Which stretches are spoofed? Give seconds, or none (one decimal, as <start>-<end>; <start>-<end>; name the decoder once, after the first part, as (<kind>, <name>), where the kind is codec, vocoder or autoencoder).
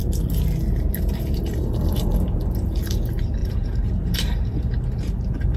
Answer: 0.9-5.6 (vocoder, BigVGAN v2)